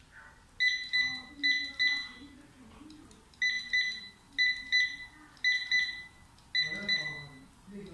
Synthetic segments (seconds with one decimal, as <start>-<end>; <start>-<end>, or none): none